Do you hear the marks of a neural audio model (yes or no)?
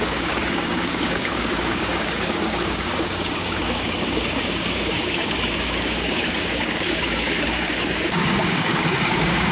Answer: yes